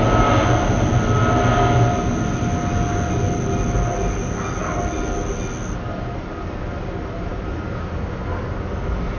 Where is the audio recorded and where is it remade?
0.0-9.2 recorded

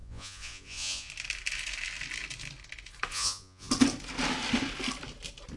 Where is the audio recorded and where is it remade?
0.0-1.1 remade; 1.1-3.1 recorded; 3.1-3.7 remade; 3.7-5.6 recorded

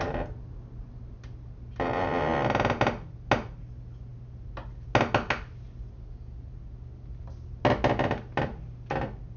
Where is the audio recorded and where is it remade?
0.0-9.4 recorded

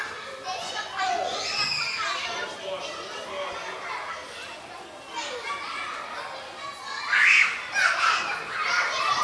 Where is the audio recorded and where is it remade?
0.0-0.4 recorded; 0.4-1.5 remade; 1.5-9.2 recorded

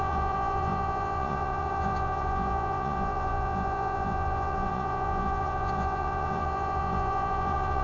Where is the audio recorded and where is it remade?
0.0-7.8 remade

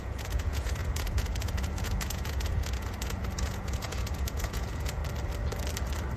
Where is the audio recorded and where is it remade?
0.0-5.0 remade; 5.0-6.2 recorded

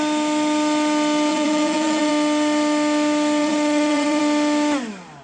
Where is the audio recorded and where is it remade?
0.0-1.3 recorded; 1.3-2.1 remade; 2.1-3.4 recorded; 3.4-4.2 remade; 4.2-5.2 recorded